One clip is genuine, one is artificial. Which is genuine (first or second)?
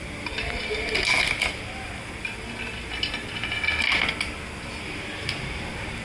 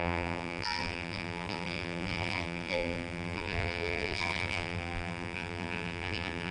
first